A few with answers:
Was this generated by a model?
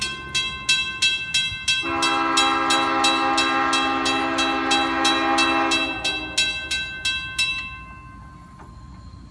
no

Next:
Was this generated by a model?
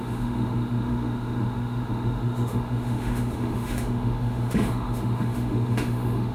yes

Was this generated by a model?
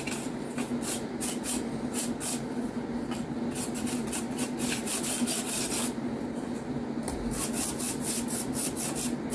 no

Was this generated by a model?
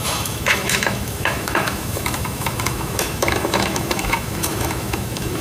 yes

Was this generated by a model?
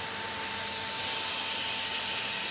no